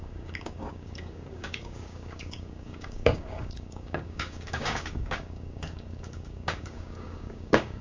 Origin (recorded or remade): remade